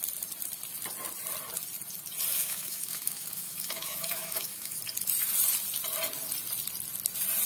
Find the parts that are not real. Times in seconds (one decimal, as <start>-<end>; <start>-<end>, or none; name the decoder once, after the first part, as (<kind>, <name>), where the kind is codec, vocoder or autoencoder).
2.3-4.8 (autoencoder, DAC-VAE)